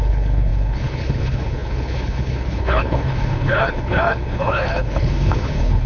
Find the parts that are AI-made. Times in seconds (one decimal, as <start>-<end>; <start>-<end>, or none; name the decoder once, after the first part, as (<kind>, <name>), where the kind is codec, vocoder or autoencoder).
0.0-5.9 (codec, HILCodec)